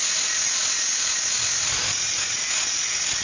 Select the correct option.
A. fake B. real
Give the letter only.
B